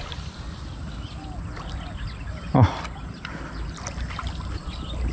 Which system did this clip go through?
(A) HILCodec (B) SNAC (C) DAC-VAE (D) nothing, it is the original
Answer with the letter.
D